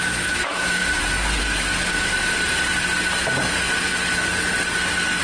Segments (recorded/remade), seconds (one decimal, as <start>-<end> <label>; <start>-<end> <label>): 0.0-0.8 remade; 0.8-1.4 recorded; 1.4-2.1 remade; 2.1-5.2 recorded